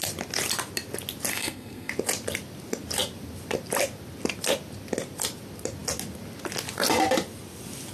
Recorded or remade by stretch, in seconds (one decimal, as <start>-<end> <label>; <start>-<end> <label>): 0.0-1.3 recorded; 1.3-1.9 remade; 1.9-7.9 recorded